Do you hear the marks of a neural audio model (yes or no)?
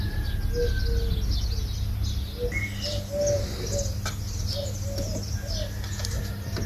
no